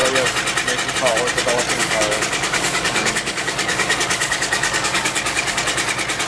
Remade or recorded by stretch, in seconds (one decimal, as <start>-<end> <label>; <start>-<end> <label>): 0.0-1.8 recorded; 1.8-5.6 remade; 5.6-6.3 recorded